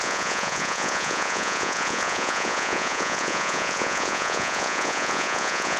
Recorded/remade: remade